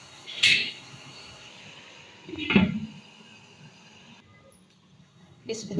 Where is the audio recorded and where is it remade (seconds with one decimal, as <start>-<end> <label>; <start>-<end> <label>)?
0.0-1.5 remade; 1.5-5.0 recorded; 5.0-5.8 remade